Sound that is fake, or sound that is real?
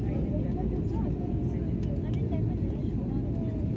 real